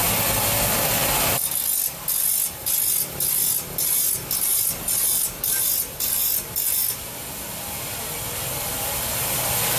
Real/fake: real